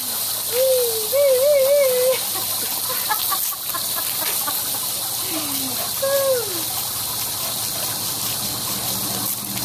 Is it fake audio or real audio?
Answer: real